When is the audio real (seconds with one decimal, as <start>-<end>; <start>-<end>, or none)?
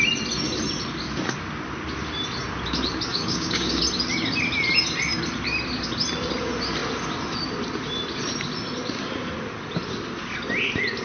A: 0.0-3.1; 3.8-11.0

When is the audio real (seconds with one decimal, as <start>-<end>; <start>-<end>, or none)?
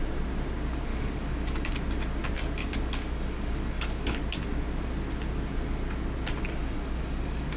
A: 0.0-0.9; 1.6-2.6; 4.2-6.6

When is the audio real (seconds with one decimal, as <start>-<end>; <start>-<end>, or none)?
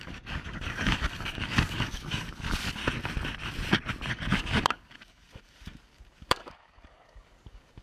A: 2.8-4.1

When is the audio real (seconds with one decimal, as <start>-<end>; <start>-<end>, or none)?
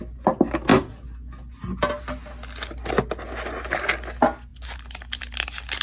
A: 0.0-5.8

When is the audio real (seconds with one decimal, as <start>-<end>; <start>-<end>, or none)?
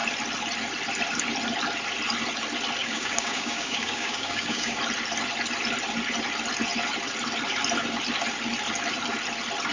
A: 0.0-2.8; 4.8-9.7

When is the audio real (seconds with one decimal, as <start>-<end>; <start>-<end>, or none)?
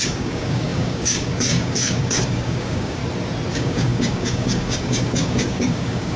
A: 3.0-3.5